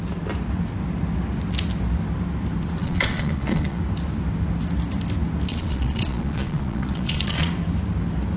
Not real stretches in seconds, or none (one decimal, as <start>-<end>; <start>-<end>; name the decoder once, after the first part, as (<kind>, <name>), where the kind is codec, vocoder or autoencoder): 2.8-3.8 (vocoder, Vocos); 5.5-7.5